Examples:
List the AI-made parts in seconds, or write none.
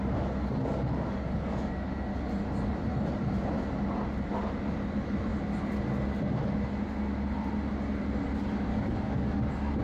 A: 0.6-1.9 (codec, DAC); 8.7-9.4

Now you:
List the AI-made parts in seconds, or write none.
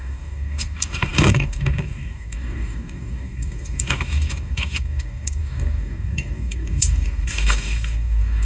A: 0.0-8.4 (codec, DAC)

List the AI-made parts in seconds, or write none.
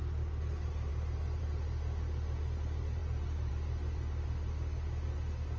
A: none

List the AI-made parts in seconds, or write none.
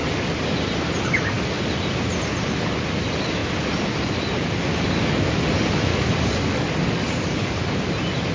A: 5.9-7.6 (codec, DAC)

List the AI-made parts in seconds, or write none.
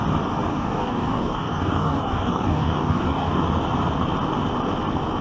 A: 0.5-3.4 (codec, DAC)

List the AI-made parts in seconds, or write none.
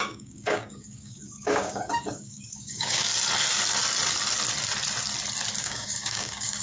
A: 0.0-3.1 (codec, DAC); 5.6-6.6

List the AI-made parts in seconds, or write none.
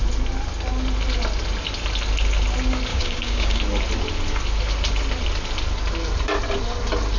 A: 2.9-3.6 (codec, DAC)